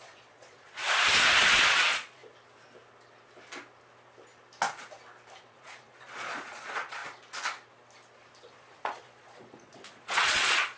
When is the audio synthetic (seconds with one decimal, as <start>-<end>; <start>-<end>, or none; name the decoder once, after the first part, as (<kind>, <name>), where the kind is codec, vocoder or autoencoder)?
0.0-0.8 (vocoder, Vocos); 1.4-2.2; 5.4-7.0; 8.5-10.8